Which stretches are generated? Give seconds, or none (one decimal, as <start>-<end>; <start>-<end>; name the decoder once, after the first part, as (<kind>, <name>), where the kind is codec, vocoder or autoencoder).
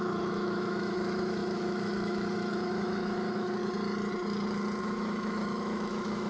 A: 0.0-3.6 (autoencoder, DAC-VAE); 4.8-6.3